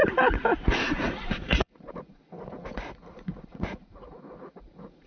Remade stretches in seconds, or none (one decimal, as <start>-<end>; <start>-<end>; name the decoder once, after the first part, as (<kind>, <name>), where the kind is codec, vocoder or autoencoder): 0.0-5.1 (vocoder, Vocos)